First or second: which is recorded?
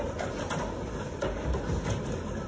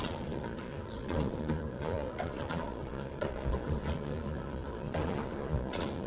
first